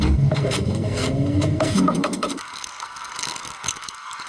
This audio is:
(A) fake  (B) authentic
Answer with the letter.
A